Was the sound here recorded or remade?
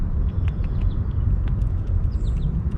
remade